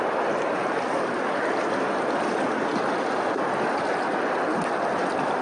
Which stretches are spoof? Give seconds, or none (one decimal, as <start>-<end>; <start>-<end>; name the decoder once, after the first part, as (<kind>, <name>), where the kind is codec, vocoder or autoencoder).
none